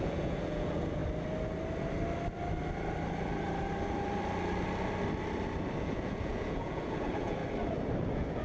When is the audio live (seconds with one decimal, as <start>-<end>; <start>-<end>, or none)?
1.0-5.8; 7.4-8.0